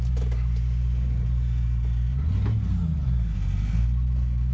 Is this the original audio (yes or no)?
yes